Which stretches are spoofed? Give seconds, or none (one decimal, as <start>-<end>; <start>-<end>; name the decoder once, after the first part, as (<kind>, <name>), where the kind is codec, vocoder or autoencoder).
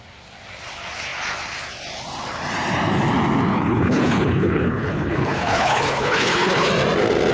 3.5-6.7 (codec, HILCodec)